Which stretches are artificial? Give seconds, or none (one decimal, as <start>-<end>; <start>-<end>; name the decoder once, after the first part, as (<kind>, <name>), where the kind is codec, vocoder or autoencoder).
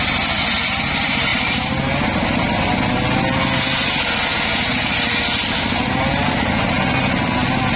none